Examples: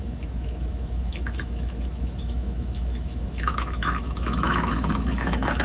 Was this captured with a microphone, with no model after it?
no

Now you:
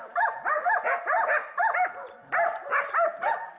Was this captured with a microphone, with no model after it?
yes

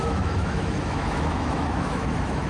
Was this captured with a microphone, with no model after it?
no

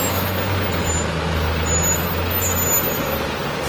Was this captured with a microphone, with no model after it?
yes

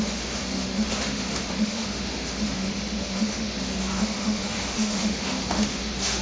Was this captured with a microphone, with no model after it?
no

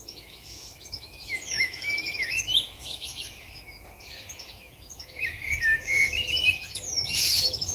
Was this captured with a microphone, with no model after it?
no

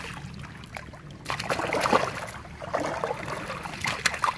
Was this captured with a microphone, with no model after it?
yes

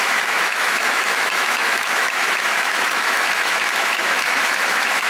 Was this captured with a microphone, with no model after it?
no